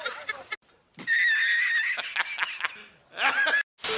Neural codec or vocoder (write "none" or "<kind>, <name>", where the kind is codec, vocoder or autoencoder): none